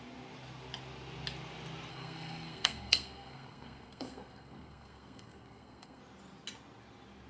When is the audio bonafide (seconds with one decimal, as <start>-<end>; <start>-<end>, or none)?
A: 0.0-1.9; 6.0-7.3